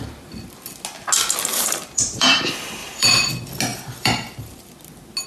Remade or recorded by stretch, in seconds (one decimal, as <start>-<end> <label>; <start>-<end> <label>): 0.0-1.5 recorded; 1.5-2.4 remade; 2.4-2.8 recorded; 2.8-3.3 remade; 3.3-3.7 recorded; 3.7-4.7 remade; 4.7-5.3 recorded